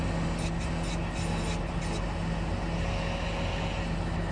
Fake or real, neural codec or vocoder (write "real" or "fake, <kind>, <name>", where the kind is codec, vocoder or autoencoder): real